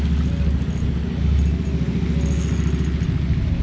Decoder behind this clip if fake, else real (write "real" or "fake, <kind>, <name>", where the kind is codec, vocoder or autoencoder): real